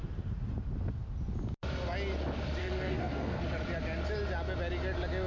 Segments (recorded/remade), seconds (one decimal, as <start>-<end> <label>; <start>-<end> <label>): 0.0-2.6 recorded; 2.6-3.4 remade; 3.4-5.3 recorded